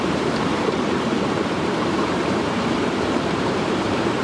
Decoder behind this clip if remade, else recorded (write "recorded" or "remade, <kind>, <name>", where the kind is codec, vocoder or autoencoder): remade, vocoder, BigVGAN v2